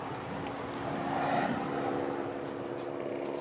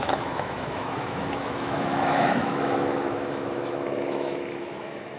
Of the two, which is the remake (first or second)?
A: second